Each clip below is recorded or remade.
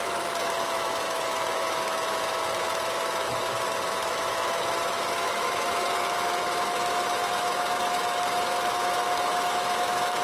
remade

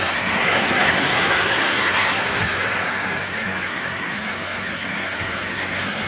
remade